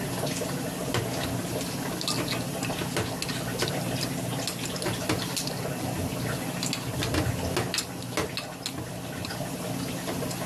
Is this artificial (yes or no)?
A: no